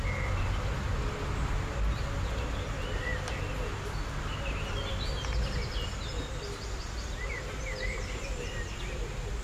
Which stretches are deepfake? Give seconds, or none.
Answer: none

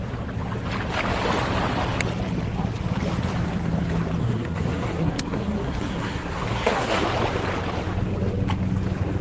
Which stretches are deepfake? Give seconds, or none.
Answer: 4.2-7.0 (codec, SNAC)

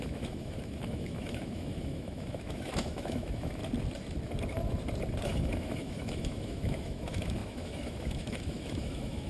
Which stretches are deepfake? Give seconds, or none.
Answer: 0.0-3.6 (autoencoder, DAC-VAE); 5.2-9.3

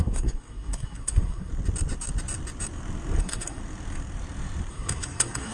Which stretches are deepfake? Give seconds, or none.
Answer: 0.0-1.5 (codec, SNAC); 3.2-3.6; 4.7-5.5

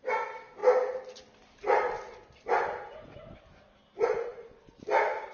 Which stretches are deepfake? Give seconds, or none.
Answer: none

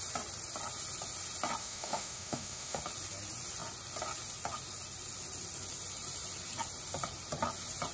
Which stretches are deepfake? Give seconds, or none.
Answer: 1.6-2.8 (autoencoder, DAC-VAE)

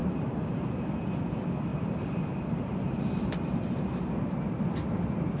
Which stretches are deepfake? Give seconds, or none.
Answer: 0.0-0.9 (vocoder, BigVGAN v2); 1.7-4.1

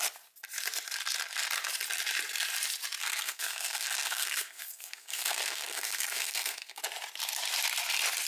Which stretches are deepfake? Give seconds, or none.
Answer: 3.0-6.8 (codec, SNAC)